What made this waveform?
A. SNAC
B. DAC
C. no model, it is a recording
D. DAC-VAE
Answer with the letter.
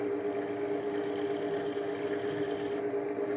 C